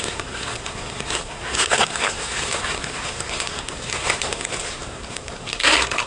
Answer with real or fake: fake